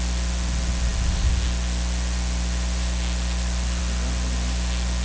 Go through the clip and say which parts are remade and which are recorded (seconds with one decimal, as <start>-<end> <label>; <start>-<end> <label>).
0.0-5.0 recorded